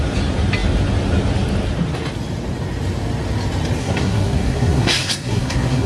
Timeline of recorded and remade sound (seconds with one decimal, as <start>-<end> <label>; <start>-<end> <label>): 0.0-3.8 recorded; 3.8-5.9 remade